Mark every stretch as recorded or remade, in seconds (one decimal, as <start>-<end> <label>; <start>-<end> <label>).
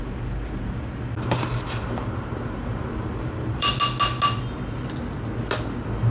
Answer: 0.0-3.7 remade; 3.7-6.1 recorded